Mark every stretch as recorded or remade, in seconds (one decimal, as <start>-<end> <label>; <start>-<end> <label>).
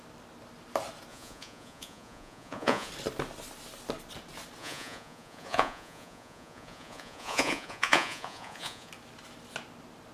0.0-1.1 recorded; 1.1-2.9 remade; 2.9-4.6 recorded; 4.6-8.9 remade; 8.9-10.1 recorded